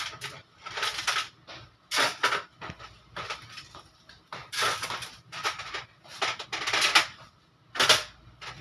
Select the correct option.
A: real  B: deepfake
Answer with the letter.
A